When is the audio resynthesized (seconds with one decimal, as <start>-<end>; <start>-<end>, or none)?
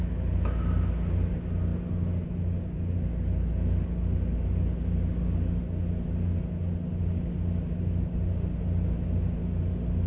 none